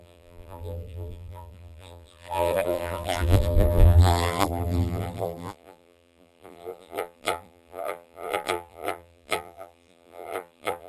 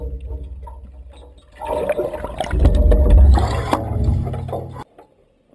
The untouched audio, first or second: second